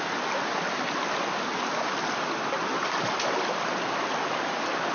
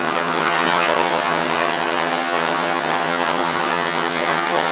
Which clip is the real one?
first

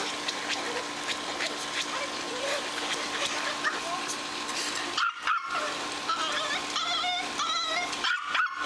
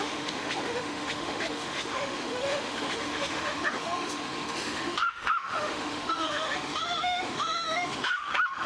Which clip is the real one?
first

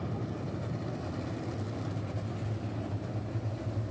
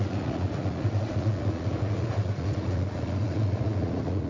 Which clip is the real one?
first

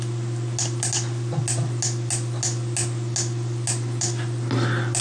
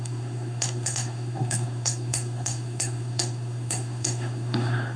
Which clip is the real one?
first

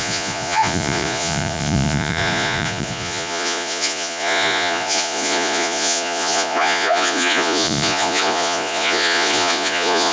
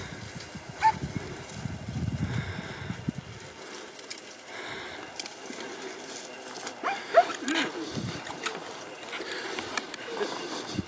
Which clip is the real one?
second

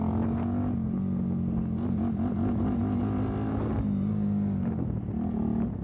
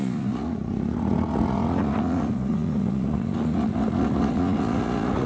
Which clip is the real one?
first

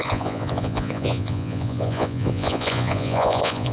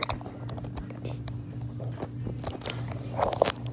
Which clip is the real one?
second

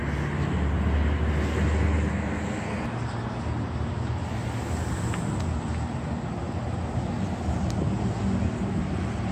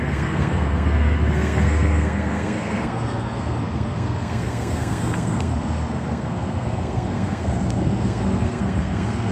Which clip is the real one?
first